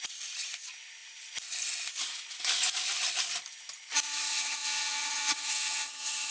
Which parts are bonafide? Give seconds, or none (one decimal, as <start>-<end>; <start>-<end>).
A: 0.0-4.3